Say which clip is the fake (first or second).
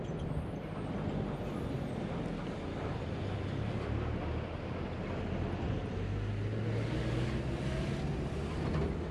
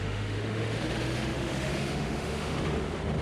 second